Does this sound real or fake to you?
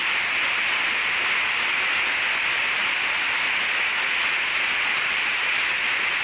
real